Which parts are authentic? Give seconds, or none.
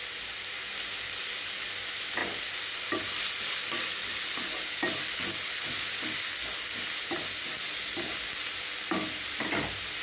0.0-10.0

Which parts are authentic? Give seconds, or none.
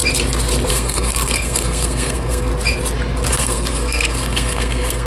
0.0-0.7; 2.5-3.3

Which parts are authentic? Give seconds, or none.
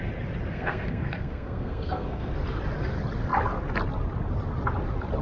0.0-0.5; 2.3-5.2